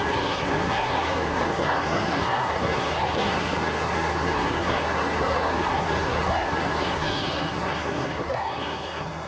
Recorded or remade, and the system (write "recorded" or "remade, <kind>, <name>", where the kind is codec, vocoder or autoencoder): remade, codec, SNAC